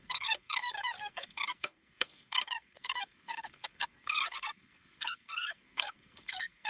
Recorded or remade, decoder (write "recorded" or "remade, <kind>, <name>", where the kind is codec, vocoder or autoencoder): remade, codec, SNAC